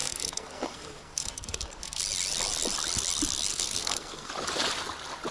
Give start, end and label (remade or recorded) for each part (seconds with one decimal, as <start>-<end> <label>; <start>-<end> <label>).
0.0-2.0 remade; 2.0-3.5 recorded; 3.5-4.3 remade; 4.3-5.3 recorded